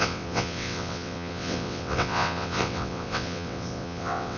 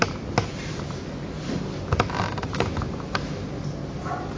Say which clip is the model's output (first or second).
first